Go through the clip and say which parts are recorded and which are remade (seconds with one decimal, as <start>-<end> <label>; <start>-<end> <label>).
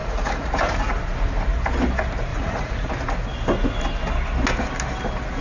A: 0.0-0.5 remade; 0.5-2.3 recorded; 2.3-2.9 remade; 2.9-5.4 recorded